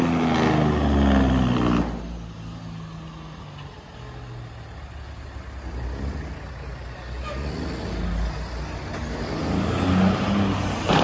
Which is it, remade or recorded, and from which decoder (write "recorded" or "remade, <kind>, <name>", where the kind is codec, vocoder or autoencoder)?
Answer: recorded